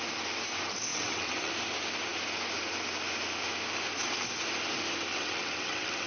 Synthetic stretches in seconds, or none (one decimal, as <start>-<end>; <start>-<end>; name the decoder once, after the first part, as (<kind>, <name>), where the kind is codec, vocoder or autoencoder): 0.9-1.5 (vocoder, WaveNeXt); 5.1-6.1